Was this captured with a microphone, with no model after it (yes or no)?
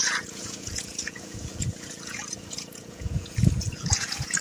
no